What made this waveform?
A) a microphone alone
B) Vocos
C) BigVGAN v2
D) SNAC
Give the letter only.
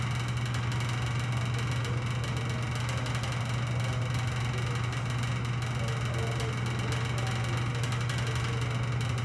A